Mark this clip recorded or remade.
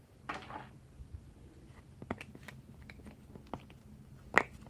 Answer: recorded